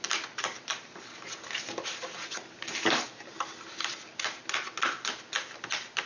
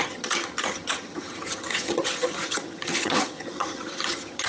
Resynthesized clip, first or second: second